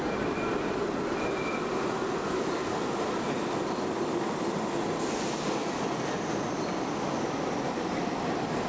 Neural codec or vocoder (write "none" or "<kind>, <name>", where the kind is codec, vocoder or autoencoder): none